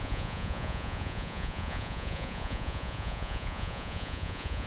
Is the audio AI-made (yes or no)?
yes